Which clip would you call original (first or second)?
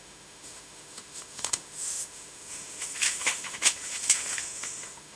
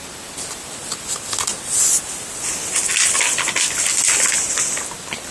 second